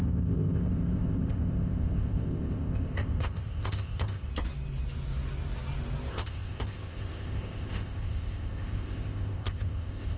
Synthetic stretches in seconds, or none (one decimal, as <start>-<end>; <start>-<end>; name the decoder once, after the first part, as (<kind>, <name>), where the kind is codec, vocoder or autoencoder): 0.0-4.3 (codec, ZipCodec); 6.1-10.2